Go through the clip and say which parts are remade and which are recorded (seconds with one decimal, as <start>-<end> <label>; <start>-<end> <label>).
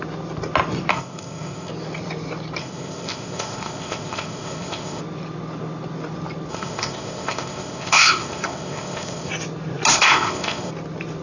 0.0-0.9 recorded; 0.9-1.7 remade; 1.7-2.6 recorded; 2.6-5.0 remade; 5.0-6.5 recorded; 6.5-9.3 remade; 9.3-9.9 recorded; 9.9-10.7 remade; 10.7-11.2 recorded